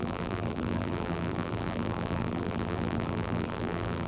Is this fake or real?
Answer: fake